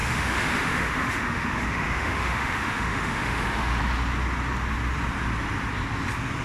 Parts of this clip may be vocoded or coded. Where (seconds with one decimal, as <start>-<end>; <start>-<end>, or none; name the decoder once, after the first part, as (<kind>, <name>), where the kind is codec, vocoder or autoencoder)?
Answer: 0.0-3.8 (autoencoder, DAC-VAE)